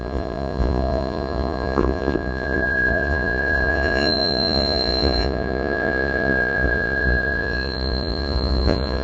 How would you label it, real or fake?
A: fake